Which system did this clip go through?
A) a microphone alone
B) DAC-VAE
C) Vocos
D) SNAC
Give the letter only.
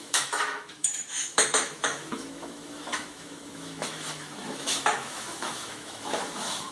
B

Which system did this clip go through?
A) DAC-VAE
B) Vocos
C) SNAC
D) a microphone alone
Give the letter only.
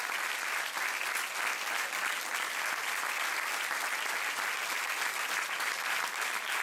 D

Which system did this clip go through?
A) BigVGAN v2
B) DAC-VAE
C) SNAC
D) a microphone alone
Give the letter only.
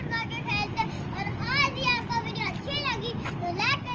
D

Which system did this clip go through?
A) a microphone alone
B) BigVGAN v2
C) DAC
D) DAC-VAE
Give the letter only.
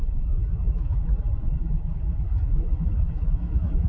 D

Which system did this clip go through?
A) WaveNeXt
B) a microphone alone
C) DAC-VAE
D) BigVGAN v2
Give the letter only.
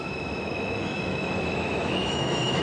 C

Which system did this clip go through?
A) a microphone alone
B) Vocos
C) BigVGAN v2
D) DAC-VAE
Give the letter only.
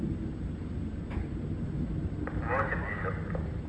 A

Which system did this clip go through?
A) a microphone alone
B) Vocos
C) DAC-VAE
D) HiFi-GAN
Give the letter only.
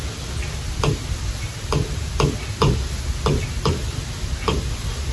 A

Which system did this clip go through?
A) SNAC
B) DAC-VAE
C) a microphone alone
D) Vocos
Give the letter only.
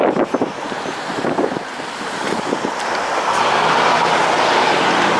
C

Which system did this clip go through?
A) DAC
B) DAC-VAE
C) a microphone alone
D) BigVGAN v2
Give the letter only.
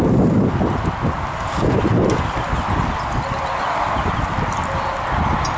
C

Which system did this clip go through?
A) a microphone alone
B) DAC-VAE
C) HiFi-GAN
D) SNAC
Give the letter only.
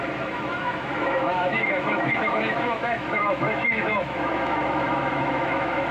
B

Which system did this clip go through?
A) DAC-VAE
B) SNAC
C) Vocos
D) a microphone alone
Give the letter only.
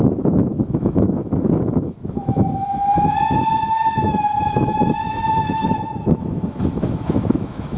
A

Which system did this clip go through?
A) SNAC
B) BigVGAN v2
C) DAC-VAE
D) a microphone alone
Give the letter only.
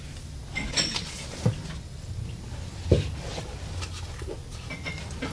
D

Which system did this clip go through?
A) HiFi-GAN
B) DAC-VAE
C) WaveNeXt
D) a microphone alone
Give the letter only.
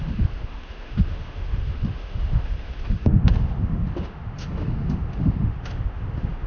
B